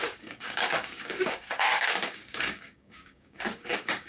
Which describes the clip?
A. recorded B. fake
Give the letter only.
B